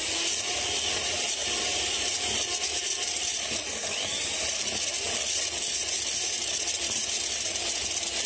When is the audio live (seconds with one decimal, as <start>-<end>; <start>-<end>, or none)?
0.0-8.3